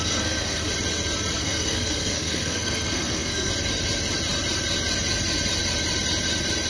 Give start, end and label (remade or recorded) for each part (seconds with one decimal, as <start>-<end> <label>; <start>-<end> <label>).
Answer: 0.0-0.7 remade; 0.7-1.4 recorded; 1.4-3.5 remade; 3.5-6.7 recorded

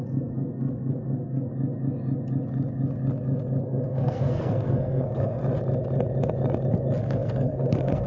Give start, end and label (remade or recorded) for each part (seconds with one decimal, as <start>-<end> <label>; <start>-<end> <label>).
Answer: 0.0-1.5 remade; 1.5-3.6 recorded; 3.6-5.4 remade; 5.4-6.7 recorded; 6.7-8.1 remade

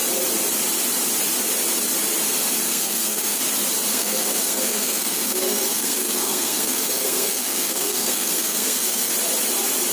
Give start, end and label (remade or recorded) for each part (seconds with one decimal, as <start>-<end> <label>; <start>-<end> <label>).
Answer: 0.0-2.7 recorded; 2.7-3.4 remade; 3.4-3.9 recorded; 3.9-9.1 remade; 9.1-9.9 recorded